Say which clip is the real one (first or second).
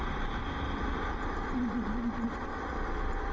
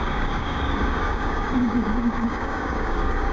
first